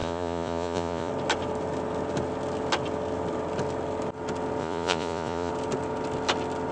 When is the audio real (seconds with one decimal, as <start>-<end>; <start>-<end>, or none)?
1.1-4.6; 5.5-6.7